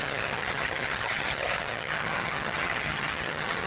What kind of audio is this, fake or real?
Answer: fake